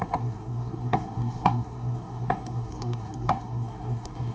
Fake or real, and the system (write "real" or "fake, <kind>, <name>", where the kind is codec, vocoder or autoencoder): fake, codec, SNAC